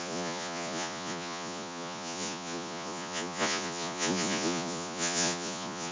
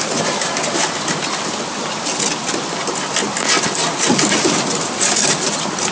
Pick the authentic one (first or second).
second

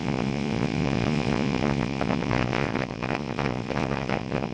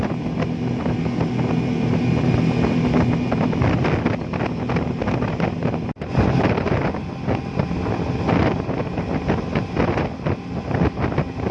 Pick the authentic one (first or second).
second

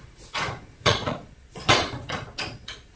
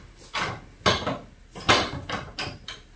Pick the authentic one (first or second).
second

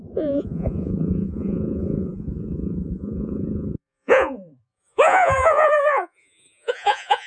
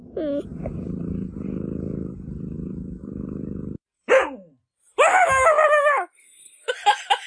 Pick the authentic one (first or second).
second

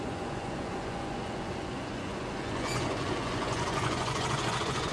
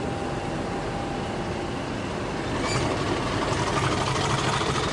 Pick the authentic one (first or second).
second